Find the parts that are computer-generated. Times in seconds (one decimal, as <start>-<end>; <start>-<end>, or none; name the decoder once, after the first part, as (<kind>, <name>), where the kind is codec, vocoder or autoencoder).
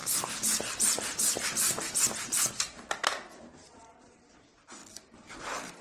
0.0-4.8 (vocoder, BigVGAN v2); 5.3-5.8